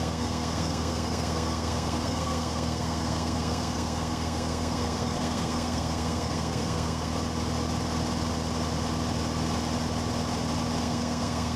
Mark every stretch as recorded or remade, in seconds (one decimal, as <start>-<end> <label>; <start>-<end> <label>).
0.0-7.1 remade; 7.1-10.8 recorded; 10.8-11.6 remade